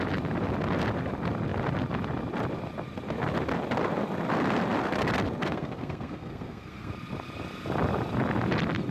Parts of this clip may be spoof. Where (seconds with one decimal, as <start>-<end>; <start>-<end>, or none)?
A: 5.4-6.9